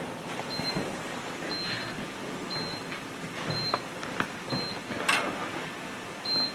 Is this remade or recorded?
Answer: recorded